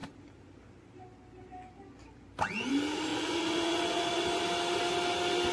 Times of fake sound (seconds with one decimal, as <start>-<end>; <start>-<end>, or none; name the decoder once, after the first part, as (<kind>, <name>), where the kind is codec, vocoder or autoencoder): 3.1-4.4 (vocoder, Vocos)